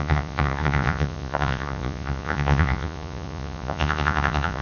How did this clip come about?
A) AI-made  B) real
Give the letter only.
A